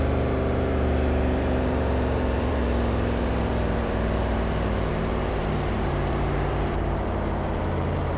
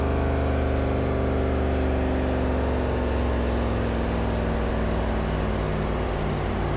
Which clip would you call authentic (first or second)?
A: second